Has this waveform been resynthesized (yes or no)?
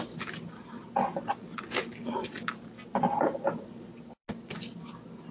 no